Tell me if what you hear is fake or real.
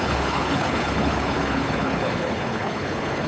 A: fake